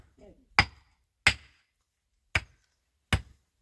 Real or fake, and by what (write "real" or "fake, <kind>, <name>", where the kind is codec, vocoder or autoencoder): real